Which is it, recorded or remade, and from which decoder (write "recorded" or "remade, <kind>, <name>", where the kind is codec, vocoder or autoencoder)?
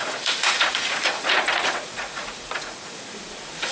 remade, vocoder, Vocos